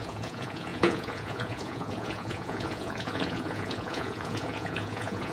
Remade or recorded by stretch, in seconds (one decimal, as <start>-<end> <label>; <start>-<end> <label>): 0.0-5.3 remade